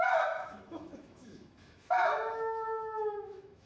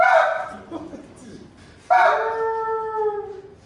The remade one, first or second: first